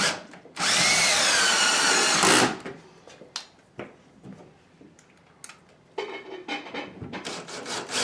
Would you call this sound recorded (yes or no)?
yes